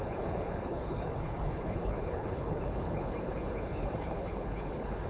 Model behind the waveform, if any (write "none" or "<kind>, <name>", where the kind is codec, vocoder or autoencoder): codec, HILCodec